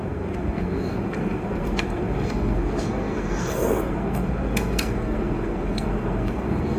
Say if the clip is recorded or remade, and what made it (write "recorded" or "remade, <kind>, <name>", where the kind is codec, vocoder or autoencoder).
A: remade, codec, SNAC